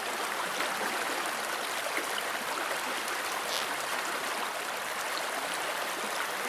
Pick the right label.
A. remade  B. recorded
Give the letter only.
B